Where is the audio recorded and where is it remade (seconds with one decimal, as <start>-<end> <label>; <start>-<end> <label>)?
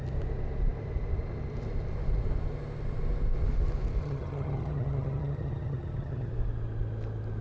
0.0-4.0 recorded; 4.0-6.3 remade; 6.3-7.4 recorded